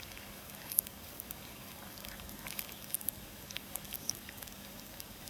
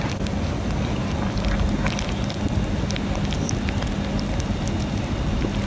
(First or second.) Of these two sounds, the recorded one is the second